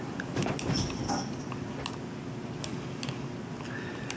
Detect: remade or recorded recorded